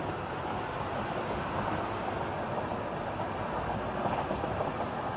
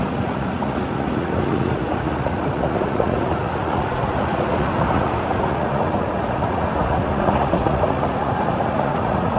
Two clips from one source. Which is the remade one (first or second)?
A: second